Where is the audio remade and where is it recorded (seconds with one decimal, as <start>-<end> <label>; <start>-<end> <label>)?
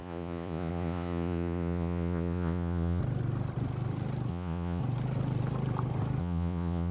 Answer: 0.0-3.0 remade; 3.0-4.3 recorded; 4.3-4.8 remade; 4.8-6.2 recorded; 6.2-6.9 remade